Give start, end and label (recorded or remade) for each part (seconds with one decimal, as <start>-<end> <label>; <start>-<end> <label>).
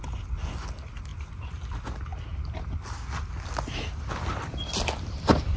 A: 0.0-5.6 recorded